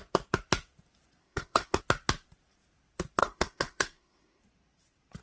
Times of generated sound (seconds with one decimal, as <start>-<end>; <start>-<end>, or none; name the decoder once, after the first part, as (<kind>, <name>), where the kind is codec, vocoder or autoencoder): 1.2-1.8 (codec, SNAC); 3.2-4.4